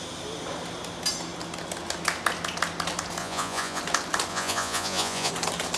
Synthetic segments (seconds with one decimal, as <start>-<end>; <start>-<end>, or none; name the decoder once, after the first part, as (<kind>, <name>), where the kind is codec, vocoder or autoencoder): 3.2-3.8 (vocoder, Vocos); 4.3-5.3